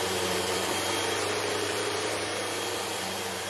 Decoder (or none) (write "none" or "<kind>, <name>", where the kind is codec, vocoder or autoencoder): vocoder, BigVGAN v2